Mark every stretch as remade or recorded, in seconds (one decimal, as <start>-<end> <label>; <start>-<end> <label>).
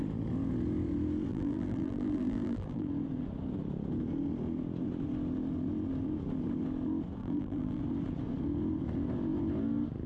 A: 0.0-1.3 recorded; 1.3-2.9 remade; 2.9-7.2 recorded; 7.2-7.8 remade; 7.8-10.1 recorded